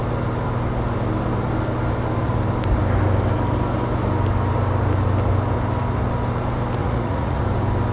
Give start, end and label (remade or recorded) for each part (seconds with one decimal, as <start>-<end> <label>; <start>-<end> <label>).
0.0-6.8 recorded; 6.8-7.4 remade; 7.4-7.9 recorded